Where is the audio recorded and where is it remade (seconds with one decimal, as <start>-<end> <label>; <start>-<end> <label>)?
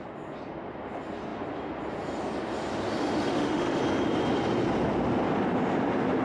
0.0-3.3 recorded; 3.3-3.8 remade; 3.8-6.2 recorded